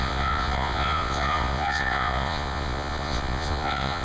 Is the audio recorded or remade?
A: remade